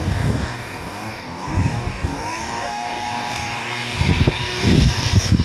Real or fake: fake